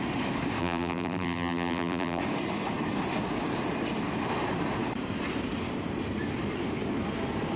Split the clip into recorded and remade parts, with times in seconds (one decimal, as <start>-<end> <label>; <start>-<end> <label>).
0.0-0.6 recorded; 0.6-2.2 remade; 2.2-7.6 recorded